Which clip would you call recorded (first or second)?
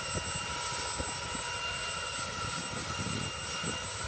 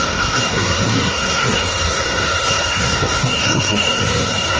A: first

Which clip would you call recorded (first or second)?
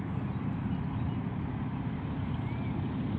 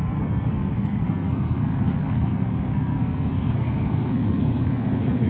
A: first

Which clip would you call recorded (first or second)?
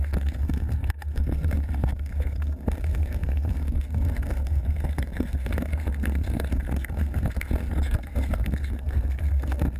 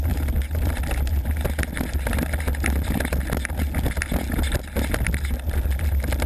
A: second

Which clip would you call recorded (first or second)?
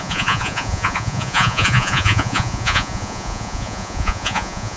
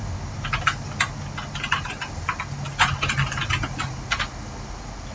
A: second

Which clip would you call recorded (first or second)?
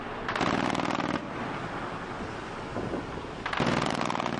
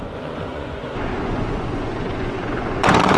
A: first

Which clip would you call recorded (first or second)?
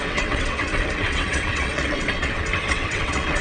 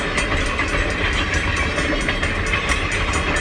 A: second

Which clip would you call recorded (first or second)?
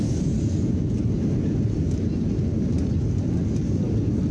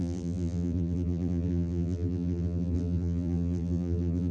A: first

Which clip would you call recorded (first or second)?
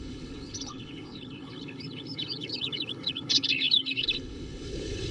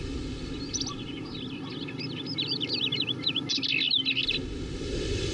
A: second